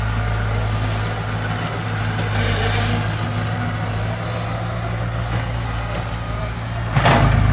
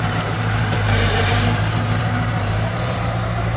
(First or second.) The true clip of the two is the first